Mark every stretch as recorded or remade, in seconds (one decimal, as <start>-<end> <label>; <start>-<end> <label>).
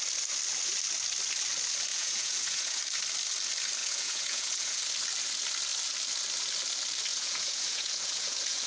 0.0-1.9 recorded; 1.9-2.8 remade; 2.8-3.8 recorded; 3.8-4.8 remade; 4.8-7.1 recorded; 7.1-8.7 remade